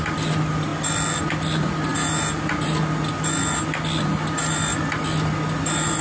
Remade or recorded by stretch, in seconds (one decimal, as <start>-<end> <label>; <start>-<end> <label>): 0.0-6.0 recorded